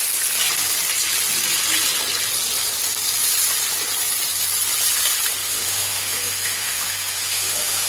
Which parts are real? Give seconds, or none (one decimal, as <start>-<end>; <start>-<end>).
0.0-5.4